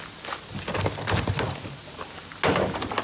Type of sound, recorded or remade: recorded